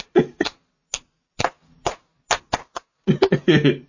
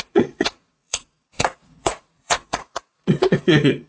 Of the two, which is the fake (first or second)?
second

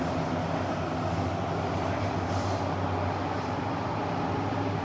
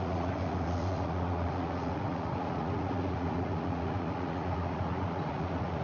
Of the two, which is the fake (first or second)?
second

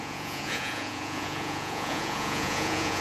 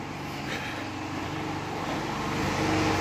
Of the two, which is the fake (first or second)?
first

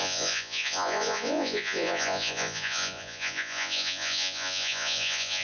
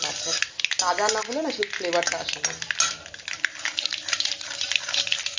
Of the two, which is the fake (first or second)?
first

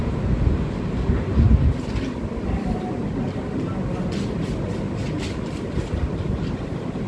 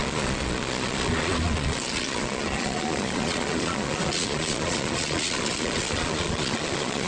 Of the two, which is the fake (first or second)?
second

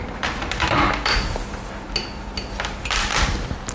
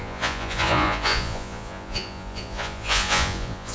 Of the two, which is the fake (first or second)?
second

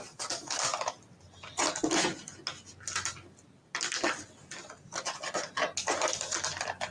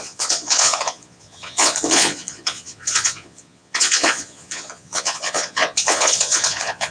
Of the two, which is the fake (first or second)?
second